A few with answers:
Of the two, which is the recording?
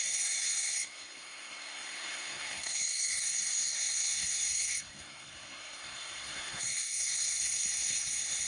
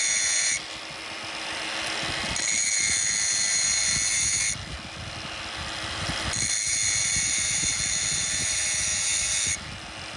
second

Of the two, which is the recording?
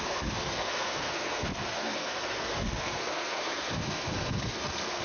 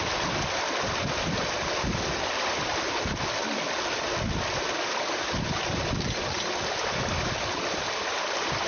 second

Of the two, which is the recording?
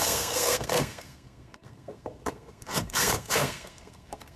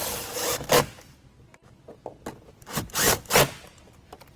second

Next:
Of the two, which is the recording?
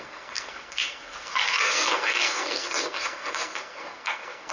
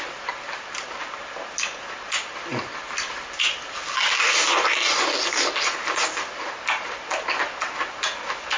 second